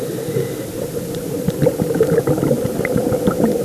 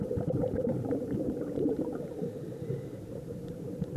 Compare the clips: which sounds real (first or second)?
first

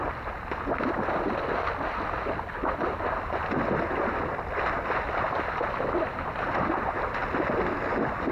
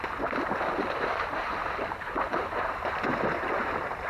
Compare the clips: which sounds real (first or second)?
first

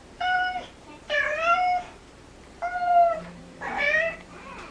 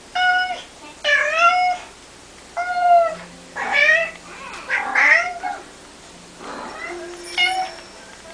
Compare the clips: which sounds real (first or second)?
second